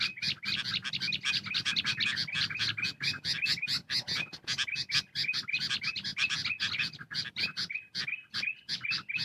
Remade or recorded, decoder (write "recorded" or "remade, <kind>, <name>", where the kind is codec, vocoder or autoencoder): recorded